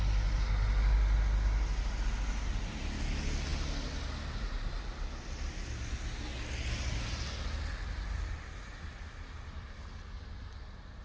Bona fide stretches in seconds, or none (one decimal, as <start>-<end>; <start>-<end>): 0.0-11.0